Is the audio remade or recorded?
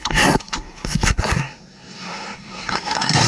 remade